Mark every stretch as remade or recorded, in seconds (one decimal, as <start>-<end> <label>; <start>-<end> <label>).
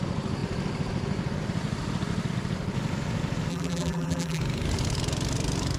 0.0-3.5 recorded; 3.5-4.4 remade; 4.4-5.8 recorded